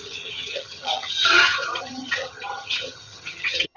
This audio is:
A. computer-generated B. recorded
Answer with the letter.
A